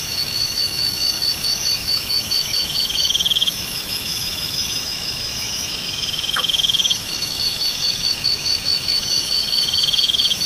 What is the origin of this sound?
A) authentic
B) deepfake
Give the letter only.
B